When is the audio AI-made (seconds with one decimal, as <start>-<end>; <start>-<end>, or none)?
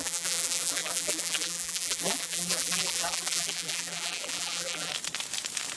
0.0-4.9